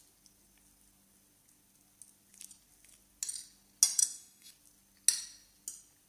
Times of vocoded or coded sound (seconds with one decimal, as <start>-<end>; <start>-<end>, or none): 4.0-4.5